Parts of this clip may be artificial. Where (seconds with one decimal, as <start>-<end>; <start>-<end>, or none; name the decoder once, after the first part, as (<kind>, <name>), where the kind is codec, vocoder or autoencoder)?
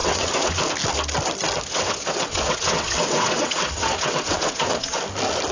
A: 0.0-0.6 (vocoder, WaveNeXt); 1.7-5.0